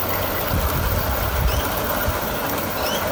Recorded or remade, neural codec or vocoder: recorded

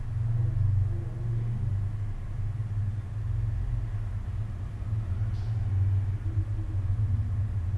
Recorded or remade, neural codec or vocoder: recorded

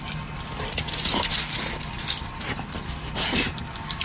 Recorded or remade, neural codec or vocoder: recorded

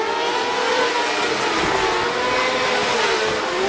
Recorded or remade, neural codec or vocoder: recorded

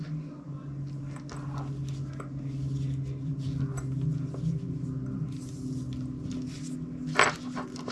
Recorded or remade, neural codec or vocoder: recorded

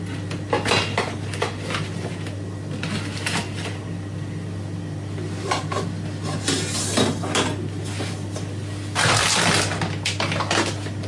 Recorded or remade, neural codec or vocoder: recorded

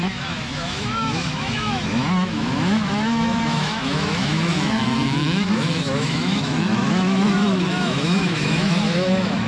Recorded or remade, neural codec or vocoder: remade, autoencoder, DAC-VAE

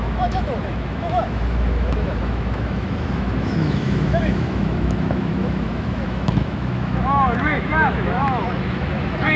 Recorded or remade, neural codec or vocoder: remade, autoencoder, DAC-VAE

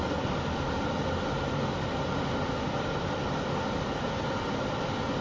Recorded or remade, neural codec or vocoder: recorded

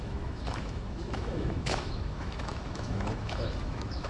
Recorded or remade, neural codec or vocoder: remade, autoencoder, DAC-VAE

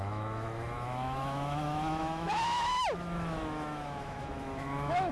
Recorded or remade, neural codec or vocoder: remade, autoencoder, DAC-VAE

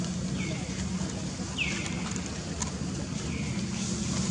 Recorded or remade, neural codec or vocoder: recorded